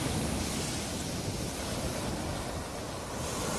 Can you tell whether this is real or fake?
real